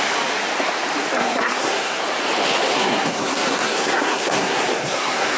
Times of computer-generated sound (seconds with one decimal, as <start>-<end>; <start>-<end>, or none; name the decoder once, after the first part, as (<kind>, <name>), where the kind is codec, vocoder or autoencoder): 1.2-2.0 (codec, SNAC); 2.7-5.4

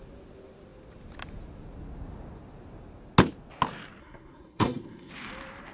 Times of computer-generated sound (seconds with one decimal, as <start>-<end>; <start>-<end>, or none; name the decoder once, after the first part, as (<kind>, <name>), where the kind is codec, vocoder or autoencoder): 4.0-5.1 (codec, SNAC)

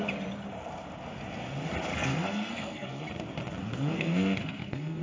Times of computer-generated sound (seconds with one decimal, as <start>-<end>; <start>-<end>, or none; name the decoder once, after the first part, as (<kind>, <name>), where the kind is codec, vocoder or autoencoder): 1.9-3.0 (codec, SNAC); 3.6-5.0

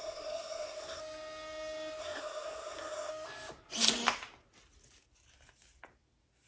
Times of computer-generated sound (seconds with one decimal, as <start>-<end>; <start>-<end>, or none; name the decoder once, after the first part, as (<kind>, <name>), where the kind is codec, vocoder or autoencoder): 0.0-1.0 (codec, SNAC); 2.0-3.1

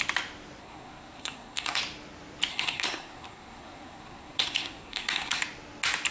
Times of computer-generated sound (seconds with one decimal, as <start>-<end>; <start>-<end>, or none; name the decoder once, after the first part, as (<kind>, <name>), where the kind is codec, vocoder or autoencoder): 0.6-1.8 (codec, SNAC); 2.5-5.4

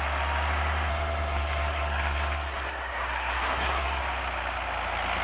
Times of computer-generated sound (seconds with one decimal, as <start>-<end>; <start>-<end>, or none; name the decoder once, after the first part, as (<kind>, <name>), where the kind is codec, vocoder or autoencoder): 0.9-4.0 (codec, SNAC)